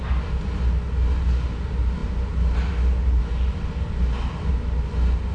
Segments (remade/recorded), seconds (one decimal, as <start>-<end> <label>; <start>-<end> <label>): 0.0-5.3 recorded